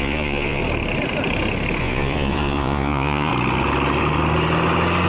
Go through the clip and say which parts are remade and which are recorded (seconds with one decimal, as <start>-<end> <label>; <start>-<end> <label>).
0.0-0.6 remade; 0.6-1.8 recorded; 1.8-3.3 remade; 3.3-5.1 recorded